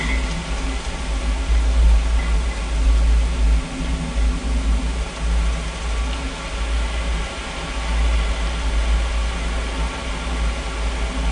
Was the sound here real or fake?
real